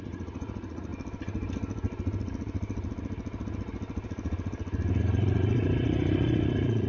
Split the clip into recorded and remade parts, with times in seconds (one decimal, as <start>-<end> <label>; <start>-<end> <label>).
0.0-0.9 remade; 0.9-5.0 recorded; 5.0-6.9 remade